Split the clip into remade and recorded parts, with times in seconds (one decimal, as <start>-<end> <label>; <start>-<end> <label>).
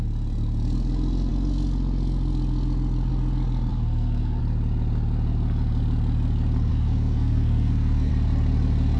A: 0.0-3.7 recorded; 3.7-4.4 remade; 4.4-6.7 recorded; 6.7-8.1 remade; 8.1-9.0 recorded